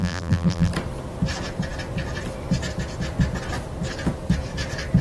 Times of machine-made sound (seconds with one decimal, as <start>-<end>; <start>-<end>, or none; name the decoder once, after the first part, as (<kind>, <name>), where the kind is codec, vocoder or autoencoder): 0.0-0.7 (vocoder, BigVGAN v2)